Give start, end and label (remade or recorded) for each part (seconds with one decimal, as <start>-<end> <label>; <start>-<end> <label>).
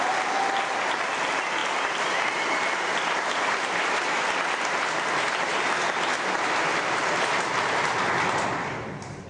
0.0-9.3 recorded